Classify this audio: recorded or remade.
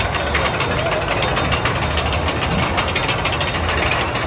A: recorded